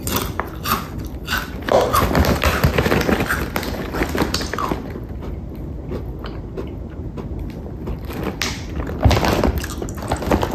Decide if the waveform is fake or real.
real